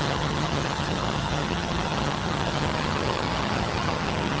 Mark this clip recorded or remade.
remade